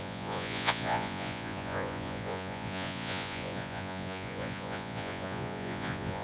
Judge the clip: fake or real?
fake